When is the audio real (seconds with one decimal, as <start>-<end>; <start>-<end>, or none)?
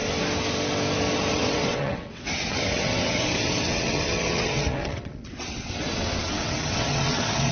0.0-1.3